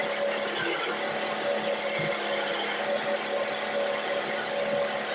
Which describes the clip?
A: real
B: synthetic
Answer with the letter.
A